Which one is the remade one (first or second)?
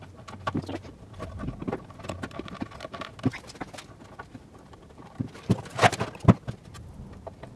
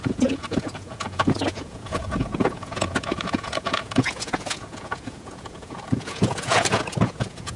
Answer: second